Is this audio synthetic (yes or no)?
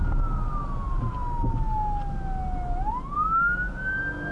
no